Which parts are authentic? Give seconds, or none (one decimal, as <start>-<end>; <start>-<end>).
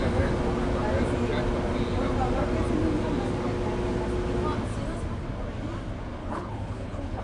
0.0-6.2